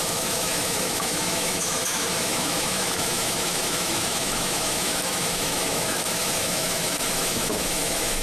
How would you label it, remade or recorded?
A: remade